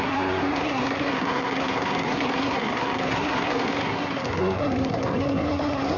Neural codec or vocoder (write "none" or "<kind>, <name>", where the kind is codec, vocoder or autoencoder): codec, SNAC